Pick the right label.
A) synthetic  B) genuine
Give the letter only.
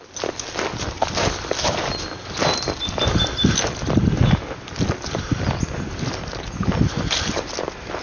B